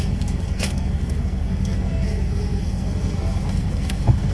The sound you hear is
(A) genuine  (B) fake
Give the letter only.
B